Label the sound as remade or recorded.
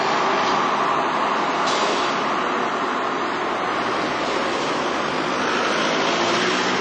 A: recorded